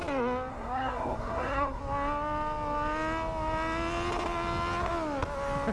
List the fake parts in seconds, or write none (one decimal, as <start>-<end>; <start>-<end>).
0.5-1.8